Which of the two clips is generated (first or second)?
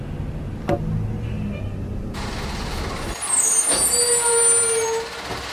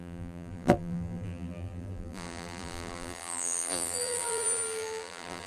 second